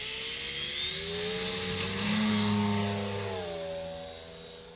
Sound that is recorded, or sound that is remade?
recorded